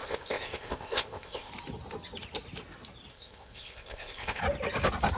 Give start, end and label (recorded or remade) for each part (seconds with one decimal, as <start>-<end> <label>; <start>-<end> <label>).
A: 0.0-1.5 remade; 1.5-3.1 recorded; 3.1-4.4 remade; 4.4-5.2 recorded